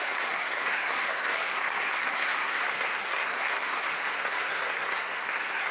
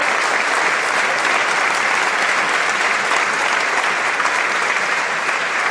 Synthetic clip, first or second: first